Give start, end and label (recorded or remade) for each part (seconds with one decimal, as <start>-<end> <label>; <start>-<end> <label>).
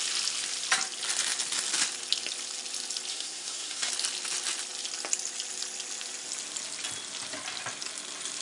0.0-3.1 recorded; 3.1-3.9 remade; 3.9-8.4 recorded